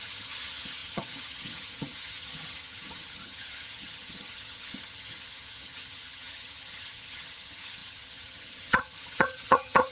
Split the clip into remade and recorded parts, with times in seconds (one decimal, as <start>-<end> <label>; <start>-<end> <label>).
0.0-9.9 remade